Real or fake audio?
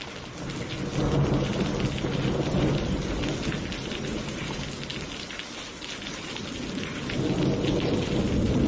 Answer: real